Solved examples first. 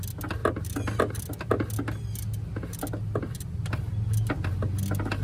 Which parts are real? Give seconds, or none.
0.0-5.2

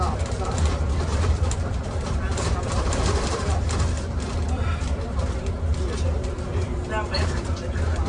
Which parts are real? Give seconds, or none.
0.0-1.1; 5.5-8.1

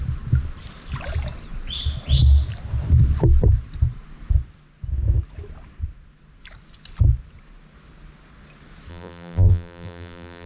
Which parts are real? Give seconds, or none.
0.0-8.9

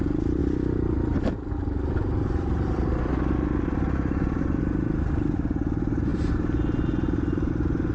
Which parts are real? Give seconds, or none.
0.0-0.4; 3.1-6.1; 7.5-7.9

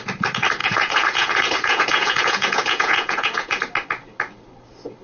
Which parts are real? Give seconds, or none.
0.0-0.6; 3.6-5.0

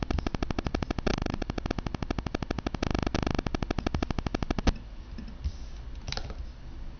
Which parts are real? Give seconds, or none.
0.0-1.1; 1.7-7.0

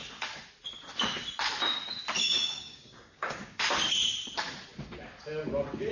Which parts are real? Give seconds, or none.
0.0-2.2; 3.6-5.9